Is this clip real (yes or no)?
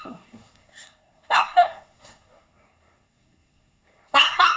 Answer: no